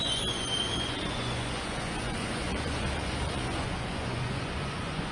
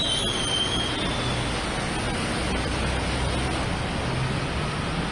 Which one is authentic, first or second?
second